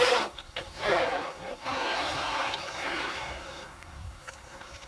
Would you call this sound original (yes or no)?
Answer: no